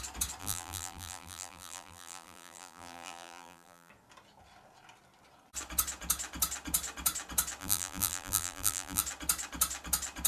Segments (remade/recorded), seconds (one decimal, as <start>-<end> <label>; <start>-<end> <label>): 0.0-0.4 recorded; 0.4-3.9 remade; 3.9-7.6 recorded; 7.6-9.0 remade; 9.0-10.3 recorded